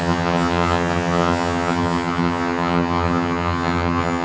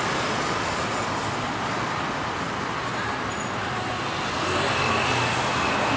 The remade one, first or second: first